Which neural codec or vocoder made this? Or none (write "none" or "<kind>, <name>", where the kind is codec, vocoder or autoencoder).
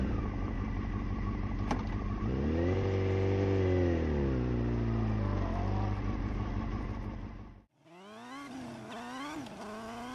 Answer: none